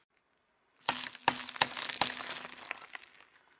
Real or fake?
real